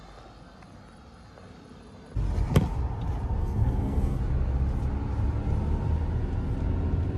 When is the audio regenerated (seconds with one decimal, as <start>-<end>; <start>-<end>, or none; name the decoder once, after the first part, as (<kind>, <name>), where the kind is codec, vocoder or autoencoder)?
3.4-4.2 (codec, SNAC)